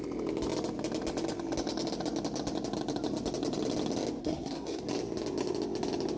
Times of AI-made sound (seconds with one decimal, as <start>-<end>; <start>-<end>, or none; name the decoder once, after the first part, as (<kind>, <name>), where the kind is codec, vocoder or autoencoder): 4.2-4.8 (codec, SNAC)